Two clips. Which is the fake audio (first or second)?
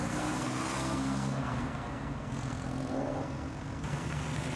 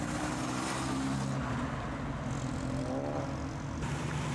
first